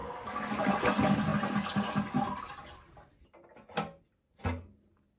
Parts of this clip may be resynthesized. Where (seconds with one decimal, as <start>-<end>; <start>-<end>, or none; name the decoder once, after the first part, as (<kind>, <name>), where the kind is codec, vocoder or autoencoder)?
0.0-0.7 (codec, DAC)